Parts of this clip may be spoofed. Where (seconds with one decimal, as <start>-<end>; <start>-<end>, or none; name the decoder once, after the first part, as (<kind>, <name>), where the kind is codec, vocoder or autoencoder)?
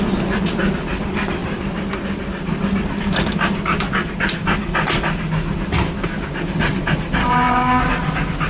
7.2-7.8 (codec, SNAC)